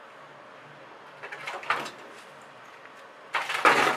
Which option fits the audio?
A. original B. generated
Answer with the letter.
A